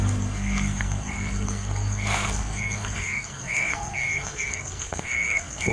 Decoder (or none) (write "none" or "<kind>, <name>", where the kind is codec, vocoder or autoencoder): codec, SNAC